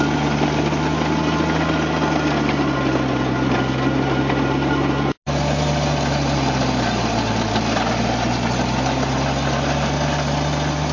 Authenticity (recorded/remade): recorded